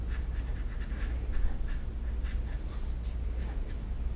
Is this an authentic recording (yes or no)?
yes